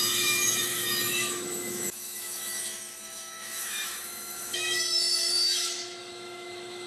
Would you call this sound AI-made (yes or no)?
yes